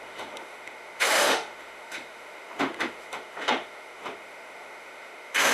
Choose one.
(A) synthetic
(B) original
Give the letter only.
A